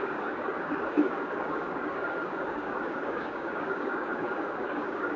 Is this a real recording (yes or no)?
no